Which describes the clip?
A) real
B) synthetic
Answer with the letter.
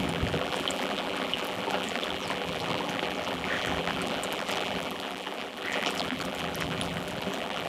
B